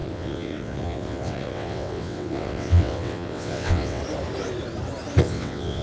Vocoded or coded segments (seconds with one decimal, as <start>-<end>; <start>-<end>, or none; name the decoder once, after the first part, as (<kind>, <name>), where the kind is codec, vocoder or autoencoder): 0.0-4.0 (vocoder, WaveNeXt); 5.2-5.8

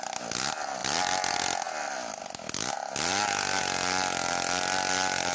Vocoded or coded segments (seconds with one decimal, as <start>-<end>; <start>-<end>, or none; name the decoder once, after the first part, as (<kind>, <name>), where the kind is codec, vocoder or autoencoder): none

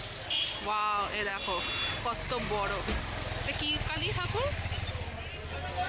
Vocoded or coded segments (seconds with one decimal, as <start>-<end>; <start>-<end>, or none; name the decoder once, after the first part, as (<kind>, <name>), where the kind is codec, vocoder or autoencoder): none

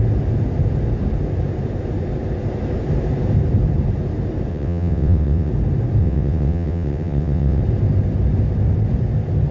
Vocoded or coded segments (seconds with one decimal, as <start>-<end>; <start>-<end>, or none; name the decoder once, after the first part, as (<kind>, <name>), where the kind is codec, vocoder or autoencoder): 4.5-5.5 (vocoder, WaveNeXt); 6.0-7.6